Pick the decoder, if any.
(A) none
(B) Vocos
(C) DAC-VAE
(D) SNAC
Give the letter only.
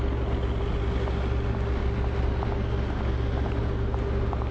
A